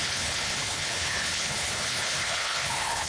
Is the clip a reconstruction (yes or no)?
yes